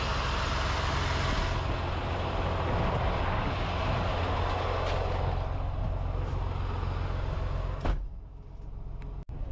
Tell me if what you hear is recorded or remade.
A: recorded